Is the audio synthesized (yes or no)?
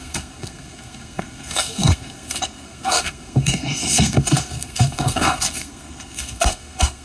yes